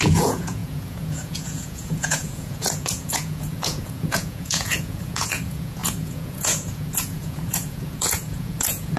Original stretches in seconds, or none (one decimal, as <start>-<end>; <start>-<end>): none